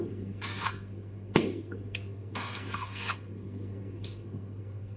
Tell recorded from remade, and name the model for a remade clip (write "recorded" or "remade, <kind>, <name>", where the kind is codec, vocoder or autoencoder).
remade, codec, SNAC